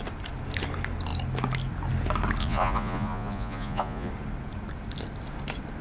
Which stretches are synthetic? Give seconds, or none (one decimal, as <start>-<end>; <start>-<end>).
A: 2.4-4.1